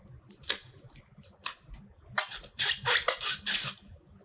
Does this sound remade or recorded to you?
recorded